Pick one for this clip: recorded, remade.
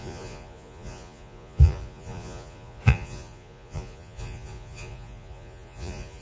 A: remade